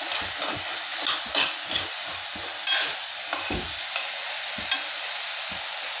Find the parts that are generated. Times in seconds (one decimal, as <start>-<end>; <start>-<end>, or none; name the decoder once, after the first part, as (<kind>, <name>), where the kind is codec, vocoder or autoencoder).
none

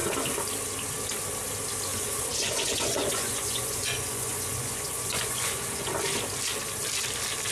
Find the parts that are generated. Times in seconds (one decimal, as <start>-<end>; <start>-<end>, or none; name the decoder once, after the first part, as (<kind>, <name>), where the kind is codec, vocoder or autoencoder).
1.9-5.9 (vocoder, Vocos)

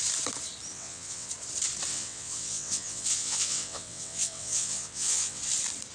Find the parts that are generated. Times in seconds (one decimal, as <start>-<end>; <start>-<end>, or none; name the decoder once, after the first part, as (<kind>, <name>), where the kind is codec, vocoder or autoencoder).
0.7-1.3 (vocoder, WaveNeXt); 1.9-5.4